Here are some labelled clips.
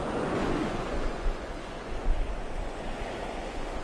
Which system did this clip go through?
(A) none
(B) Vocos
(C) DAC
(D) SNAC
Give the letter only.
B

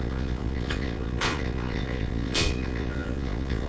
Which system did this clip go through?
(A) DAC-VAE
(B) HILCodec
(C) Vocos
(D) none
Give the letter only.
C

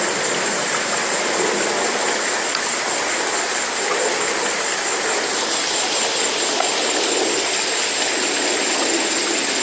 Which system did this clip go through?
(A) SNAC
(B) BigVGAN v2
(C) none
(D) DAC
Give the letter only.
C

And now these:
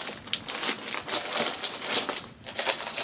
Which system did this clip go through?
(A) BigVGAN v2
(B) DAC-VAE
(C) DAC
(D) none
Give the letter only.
D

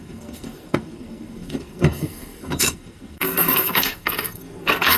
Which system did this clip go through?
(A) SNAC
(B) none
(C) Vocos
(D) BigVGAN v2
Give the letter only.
A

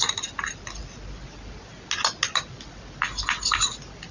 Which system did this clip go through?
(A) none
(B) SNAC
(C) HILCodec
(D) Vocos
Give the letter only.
A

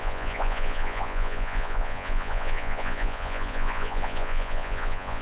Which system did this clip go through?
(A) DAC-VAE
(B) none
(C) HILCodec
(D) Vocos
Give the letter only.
D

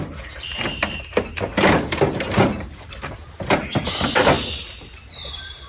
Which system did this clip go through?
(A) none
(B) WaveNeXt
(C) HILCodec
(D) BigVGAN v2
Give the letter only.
A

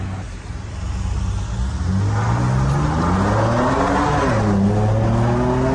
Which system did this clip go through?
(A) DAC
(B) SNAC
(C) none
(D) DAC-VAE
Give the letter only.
C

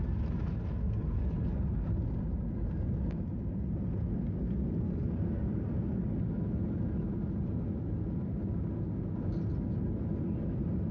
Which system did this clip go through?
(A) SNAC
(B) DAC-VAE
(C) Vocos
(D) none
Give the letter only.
D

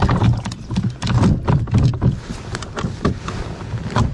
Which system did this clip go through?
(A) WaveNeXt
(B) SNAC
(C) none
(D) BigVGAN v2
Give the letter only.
C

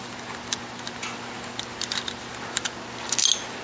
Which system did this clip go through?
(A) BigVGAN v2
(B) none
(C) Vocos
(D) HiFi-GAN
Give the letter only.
B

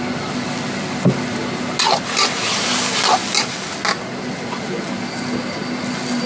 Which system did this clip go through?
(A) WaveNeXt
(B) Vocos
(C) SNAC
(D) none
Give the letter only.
D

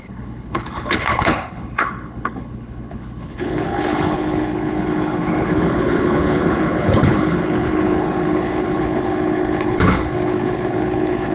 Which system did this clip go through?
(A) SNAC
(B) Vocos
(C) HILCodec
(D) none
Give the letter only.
C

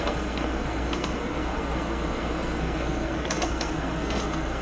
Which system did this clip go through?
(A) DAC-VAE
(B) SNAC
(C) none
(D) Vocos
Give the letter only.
B